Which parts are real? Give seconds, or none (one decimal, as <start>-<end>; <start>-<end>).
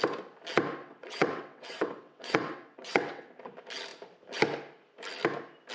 0.0-0.8; 3.3-5.7